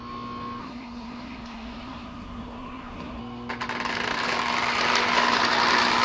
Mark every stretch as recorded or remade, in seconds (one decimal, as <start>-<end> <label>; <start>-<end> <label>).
0.0-0.6 recorded; 0.6-3.2 remade; 3.2-6.0 recorded